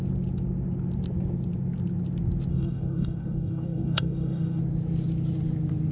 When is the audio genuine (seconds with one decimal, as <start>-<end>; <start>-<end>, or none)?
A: 0.0-2.5; 4.6-5.9